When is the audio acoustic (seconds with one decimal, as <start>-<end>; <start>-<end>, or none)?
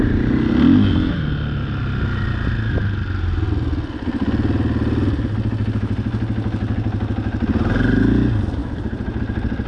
0.0-8.6; 9.2-9.7